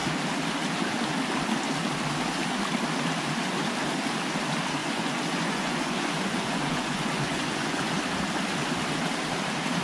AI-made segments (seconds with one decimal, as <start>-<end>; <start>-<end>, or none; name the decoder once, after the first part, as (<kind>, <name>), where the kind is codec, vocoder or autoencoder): 4.8-7.9 (vocoder, Vocos)